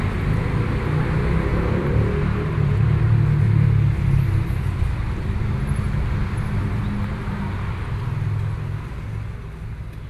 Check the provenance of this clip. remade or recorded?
recorded